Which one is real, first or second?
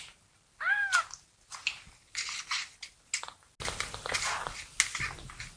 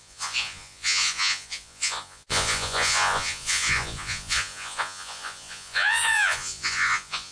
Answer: first